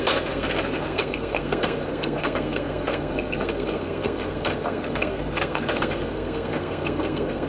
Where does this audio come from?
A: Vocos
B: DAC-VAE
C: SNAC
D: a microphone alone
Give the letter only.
C